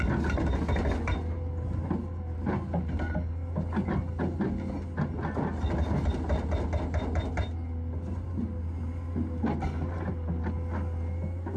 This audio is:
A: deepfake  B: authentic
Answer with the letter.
B